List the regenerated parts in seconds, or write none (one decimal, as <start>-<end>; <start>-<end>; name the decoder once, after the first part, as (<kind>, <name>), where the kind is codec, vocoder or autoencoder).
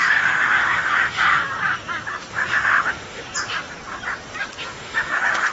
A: 0.0-1.4 (autoencoder, DAC-VAE); 2.3-3.2; 4.6-5.5